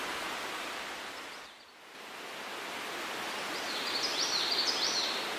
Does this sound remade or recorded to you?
recorded